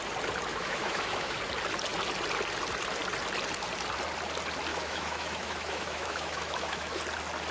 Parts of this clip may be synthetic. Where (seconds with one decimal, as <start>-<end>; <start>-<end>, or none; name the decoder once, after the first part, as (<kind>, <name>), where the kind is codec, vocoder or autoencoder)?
0.5-1.4 (autoencoder, DAC-VAE); 4.7-7.0